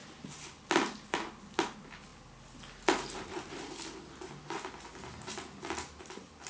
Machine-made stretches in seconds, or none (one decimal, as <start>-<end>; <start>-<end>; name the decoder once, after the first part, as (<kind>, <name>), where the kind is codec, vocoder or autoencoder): none